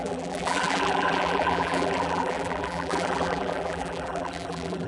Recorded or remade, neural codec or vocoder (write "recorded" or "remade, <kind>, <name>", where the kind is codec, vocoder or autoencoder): remade, vocoder, BigVGAN v2